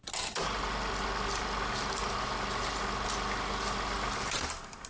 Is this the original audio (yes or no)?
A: yes